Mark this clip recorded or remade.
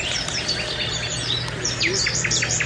recorded